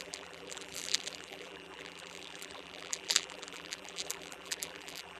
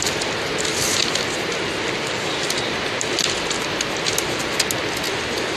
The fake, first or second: first